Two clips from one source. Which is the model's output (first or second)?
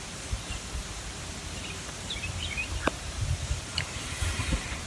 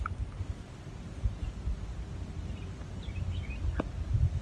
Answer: first